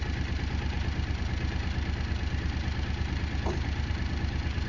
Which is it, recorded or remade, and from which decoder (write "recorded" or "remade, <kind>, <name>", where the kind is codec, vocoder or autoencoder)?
recorded